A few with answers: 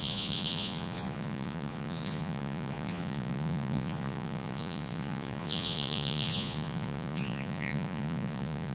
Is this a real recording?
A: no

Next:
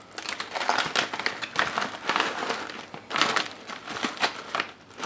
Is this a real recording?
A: yes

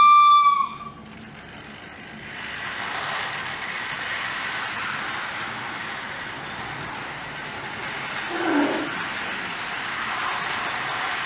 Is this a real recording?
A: yes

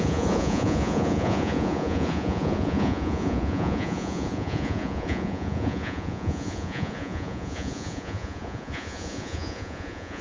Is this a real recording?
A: no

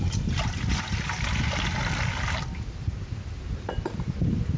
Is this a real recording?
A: yes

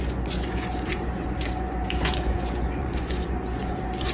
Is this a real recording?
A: no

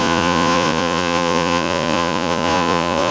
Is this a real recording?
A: no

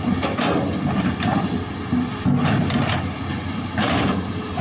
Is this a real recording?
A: yes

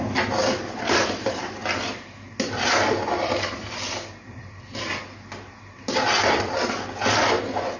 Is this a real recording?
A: yes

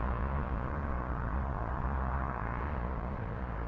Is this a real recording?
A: no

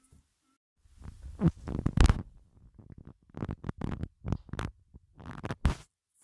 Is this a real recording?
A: yes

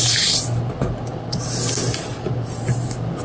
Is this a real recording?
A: yes